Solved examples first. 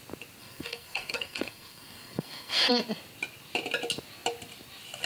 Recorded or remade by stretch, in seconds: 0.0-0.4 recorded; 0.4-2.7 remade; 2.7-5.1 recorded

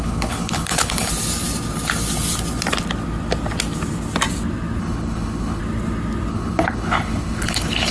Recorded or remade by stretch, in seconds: 0.0-1.1 remade; 1.1-4.8 recorded; 4.8-5.6 remade; 5.6-6.3 recorded; 6.3-7.9 remade

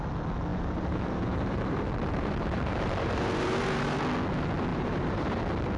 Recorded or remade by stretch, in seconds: 0.0-0.5 recorded; 0.5-4.0 remade; 4.0-4.7 recorded; 4.7-5.3 remade; 5.3-5.8 recorded

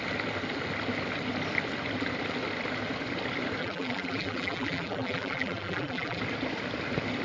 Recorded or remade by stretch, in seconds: 0.0-3.6 recorded; 3.6-6.2 remade; 6.2-7.2 recorded

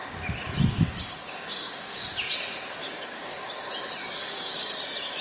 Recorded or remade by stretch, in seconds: 0.0-1.0 recorded; 1.0-2.1 remade; 2.1-2.8 recorded; 2.8-3.5 remade; 3.5-4.0 recorded; 4.0-4.8 remade; 4.8-5.2 recorded

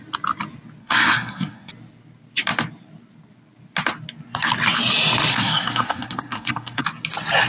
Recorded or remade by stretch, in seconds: 0.0-0.8 recorded; 0.8-1.7 remade; 1.7-5.3 recorded; 5.3-6.8 remade; 6.8-7.5 recorded